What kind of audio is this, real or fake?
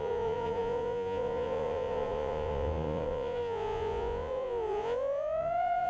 fake